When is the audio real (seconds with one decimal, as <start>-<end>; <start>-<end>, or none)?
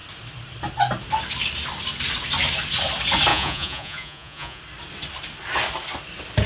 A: 0.0-3.3; 4.6-6.5